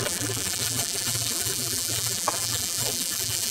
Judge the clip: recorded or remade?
remade